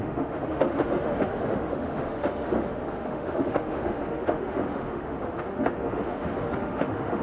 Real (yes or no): no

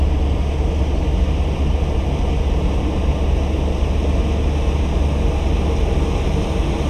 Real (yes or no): yes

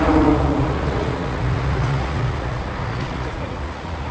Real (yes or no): no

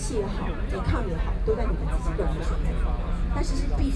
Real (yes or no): yes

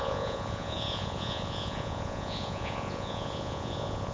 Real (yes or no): no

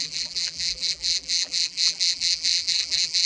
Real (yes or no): no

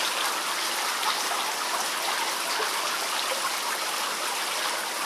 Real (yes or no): yes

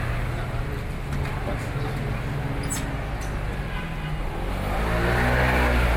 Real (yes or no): yes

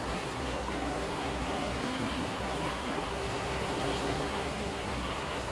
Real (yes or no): no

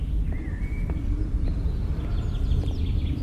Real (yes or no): yes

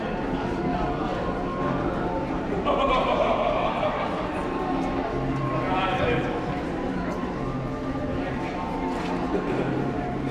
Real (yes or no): no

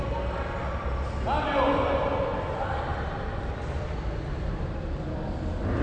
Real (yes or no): yes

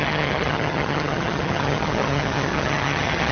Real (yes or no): no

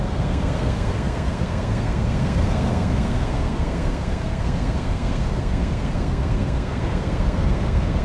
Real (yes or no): no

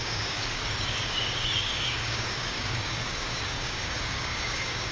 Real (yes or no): no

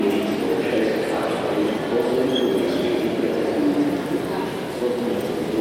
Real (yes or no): yes